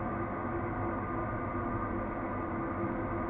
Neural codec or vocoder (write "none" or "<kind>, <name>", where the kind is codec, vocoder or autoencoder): none